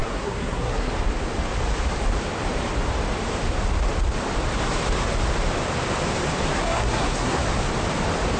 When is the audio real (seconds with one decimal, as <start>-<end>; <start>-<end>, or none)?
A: 0.9-6.5; 7.4-8.4